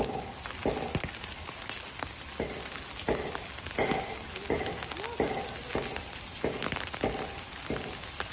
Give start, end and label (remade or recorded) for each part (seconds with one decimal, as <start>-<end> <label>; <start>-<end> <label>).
0.0-8.3 recorded